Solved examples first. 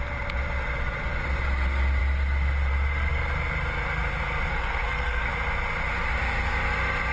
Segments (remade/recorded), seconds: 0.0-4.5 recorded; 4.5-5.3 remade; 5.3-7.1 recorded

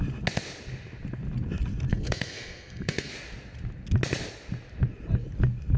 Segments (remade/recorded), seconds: 0.0-1.9 recorded; 1.9-3.1 remade; 3.1-5.8 recorded

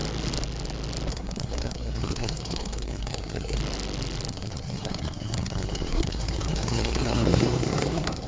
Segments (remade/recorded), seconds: 0.0-1.1 recorded; 1.1-3.6 remade; 3.6-4.3 recorded; 4.3-8.3 remade

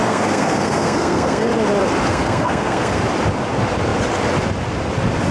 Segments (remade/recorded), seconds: 0.0-1.5 remade; 1.5-2.1 recorded; 2.1-3.0 remade; 3.0-5.3 recorded

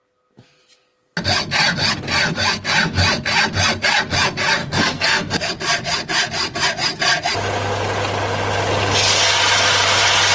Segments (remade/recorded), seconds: 0.0-4.6 recorded; 4.6-5.5 remade; 5.5-10.3 recorded

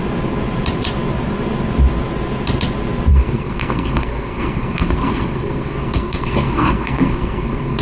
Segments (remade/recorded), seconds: 0.0-3.1 recorded; 3.1-7.8 remade